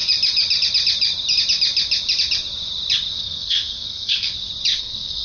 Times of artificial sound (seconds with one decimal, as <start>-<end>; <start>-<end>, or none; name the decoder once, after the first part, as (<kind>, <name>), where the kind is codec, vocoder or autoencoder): 3.1-4.3 (codec, SNAC); 4.8-5.2